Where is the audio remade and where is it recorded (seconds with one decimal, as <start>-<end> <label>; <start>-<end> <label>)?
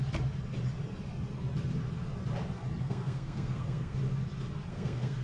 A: 0.0-2.8 recorded; 2.8-4.0 remade; 4.0-4.7 recorded; 4.7-5.2 remade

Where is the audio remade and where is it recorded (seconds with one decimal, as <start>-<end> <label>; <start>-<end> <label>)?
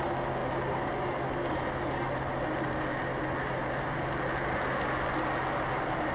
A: 0.0-6.1 recorded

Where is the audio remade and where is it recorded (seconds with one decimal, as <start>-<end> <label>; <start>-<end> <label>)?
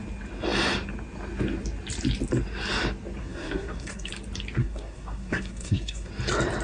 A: 0.0-3.2 recorded; 3.2-4.1 remade; 4.1-4.6 recorded; 4.6-6.1 remade; 6.1-6.6 recorded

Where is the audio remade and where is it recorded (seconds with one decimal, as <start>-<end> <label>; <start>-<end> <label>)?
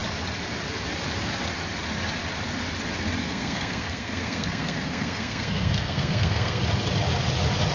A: 0.0-3.2 recorded; 3.2-6.6 remade; 6.6-7.7 recorded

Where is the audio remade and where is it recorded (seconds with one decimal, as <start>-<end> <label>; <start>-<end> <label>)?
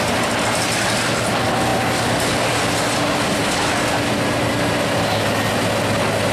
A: 0.0-6.3 recorded